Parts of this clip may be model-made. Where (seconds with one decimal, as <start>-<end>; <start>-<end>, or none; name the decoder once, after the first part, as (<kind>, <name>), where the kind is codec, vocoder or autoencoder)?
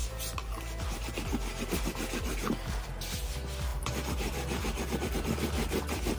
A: 0.0-1.2 (vocoder, BigVGAN v2)